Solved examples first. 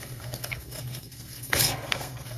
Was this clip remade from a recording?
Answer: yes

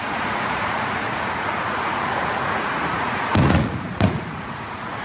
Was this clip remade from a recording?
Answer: yes